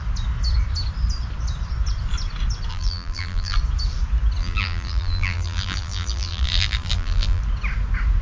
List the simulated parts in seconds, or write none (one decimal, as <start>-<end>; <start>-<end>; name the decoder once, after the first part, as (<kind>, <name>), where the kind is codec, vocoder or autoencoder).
2.7-3.6 (vocoder, BigVGAN v2); 4.4-7.4